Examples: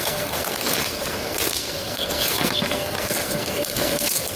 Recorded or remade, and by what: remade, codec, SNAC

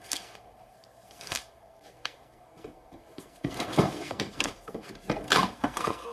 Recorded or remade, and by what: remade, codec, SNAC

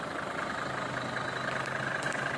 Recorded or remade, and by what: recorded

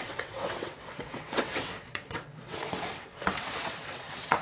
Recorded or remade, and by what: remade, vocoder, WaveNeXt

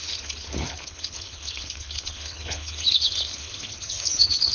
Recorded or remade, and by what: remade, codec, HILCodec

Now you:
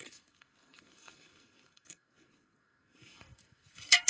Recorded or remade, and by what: remade, codec, SNAC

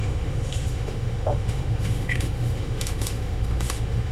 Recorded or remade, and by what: remade, autoencoder, DAC-VAE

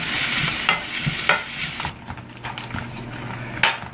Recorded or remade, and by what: recorded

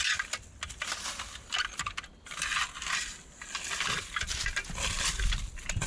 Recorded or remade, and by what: recorded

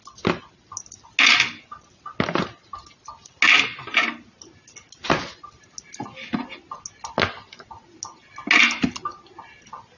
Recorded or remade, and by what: recorded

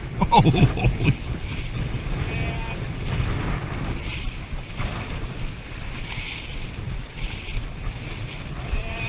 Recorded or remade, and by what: remade, vocoder, BigVGAN v2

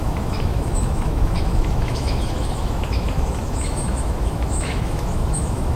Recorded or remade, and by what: remade, autoencoder, DAC-VAE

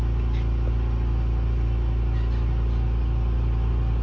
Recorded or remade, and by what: recorded